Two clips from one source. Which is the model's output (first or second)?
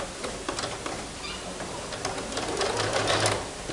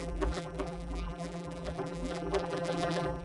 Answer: second